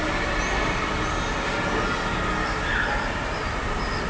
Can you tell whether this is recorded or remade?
recorded